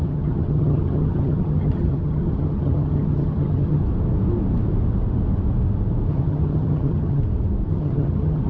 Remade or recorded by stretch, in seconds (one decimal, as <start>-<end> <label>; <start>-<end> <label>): 0.0-3.8 remade; 3.8-6.1 recorded; 6.1-7.2 remade; 7.2-7.7 recorded; 7.7-8.5 remade